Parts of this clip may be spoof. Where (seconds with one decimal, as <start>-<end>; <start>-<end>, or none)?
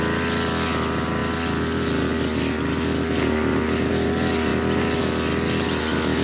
none